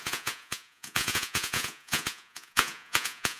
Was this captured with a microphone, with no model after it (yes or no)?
no